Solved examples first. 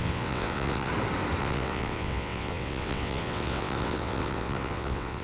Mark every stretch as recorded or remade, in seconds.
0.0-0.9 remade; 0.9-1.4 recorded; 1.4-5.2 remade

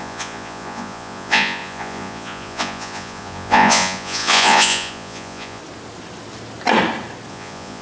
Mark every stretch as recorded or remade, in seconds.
0.0-5.6 remade; 5.6-7.3 recorded; 7.3-7.8 remade

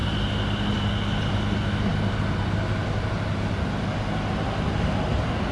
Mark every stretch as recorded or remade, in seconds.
0.0-5.5 recorded

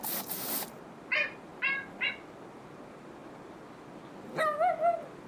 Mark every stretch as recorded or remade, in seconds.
0.0-1.5 recorded; 1.5-2.1 remade; 2.1-5.3 recorded

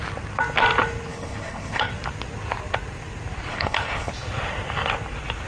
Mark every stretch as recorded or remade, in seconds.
0.0-1.1 recorded; 1.1-1.9 remade; 1.9-3.5 recorded; 3.5-4.1 remade; 4.1-5.5 recorded

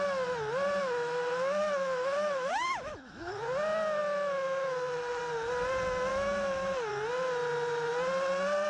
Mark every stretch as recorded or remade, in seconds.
0.0-0.8 recorded; 0.8-3.3 remade; 3.3-4.0 recorded; 4.0-5.2 remade; 5.2-6.1 recorded; 6.1-6.9 remade; 6.9-8.7 recorded

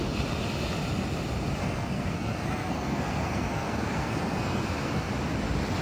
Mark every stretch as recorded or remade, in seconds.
0.0-1.6 recorded; 1.6-5.1 remade; 5.1-5.8 recorded